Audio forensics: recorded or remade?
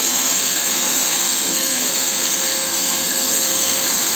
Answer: remade